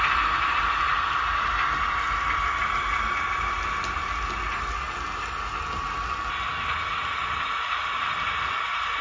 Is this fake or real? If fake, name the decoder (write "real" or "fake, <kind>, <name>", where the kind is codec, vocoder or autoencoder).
real